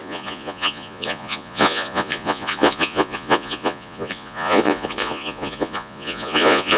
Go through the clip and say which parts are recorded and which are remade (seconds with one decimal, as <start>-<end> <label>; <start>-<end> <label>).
0.0-6.8 remade